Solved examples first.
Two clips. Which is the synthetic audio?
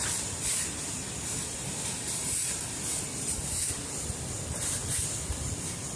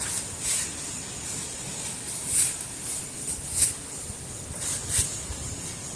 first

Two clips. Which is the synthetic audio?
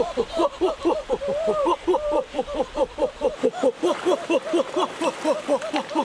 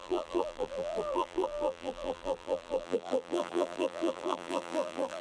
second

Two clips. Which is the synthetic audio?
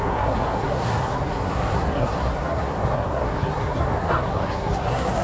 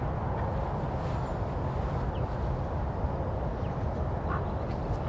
first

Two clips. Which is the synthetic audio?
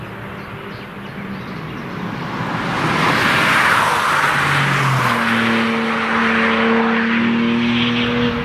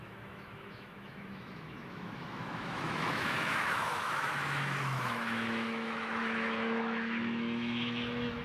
second